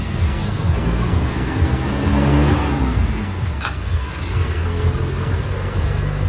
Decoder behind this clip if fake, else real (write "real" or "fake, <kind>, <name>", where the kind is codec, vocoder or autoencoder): fake, codec, SNAC